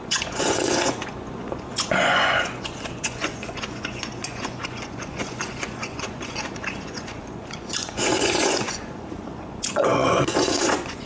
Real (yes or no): no